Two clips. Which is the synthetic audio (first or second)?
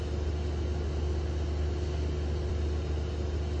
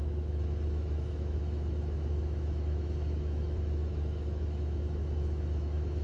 second